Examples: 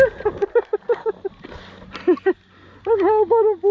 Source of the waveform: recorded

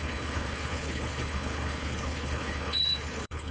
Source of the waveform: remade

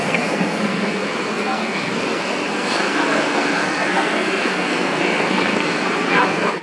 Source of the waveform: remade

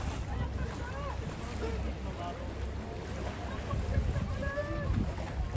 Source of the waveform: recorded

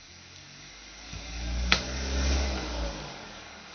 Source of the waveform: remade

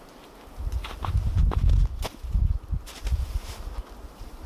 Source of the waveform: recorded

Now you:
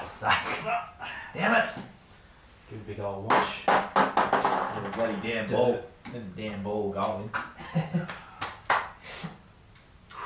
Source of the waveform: recorded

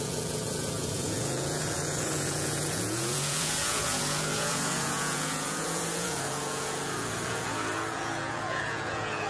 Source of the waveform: remade